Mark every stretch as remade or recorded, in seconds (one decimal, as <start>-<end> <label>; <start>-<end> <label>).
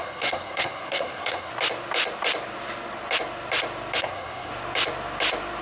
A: 0.0-1.5 remade; 1.5-4.0 recorded; 4.0-4.5 remade; 4.5-5.6 recorded